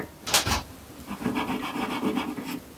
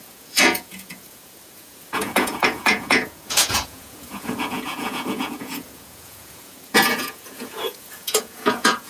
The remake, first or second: second